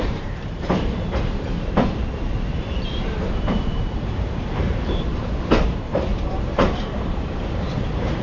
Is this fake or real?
fake